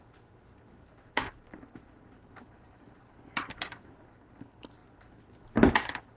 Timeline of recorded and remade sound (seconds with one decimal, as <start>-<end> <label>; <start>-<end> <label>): 0.0-0.7 recorded; 0.7-4.3 remade; 4.3-6.2 recorded